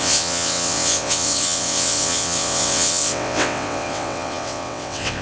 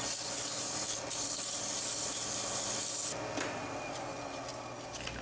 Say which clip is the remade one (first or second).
first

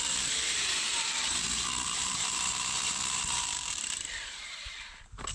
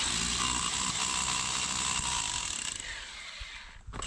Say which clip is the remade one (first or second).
first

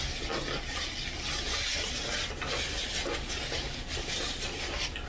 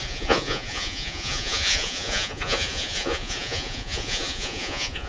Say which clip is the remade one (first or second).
second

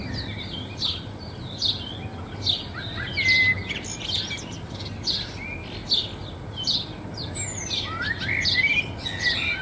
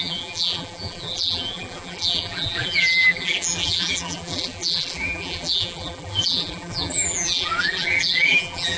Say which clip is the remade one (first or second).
second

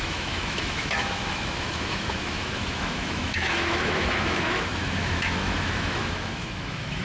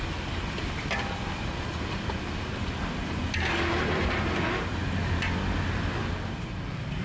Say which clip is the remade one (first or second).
first